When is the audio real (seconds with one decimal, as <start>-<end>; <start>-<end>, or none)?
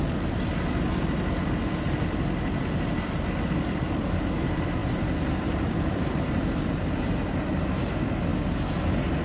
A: 8.3-9.2